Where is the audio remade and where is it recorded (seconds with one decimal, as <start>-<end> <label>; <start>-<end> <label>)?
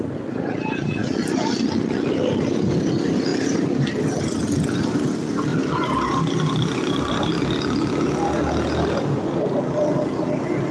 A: 0.0-3.3 recorded; 3.3-3.9 remade; 3.9-5.5 recorded; 5.5-7.4 remade; 7.4-10.7 recorded